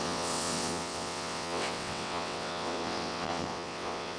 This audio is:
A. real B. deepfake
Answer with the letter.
B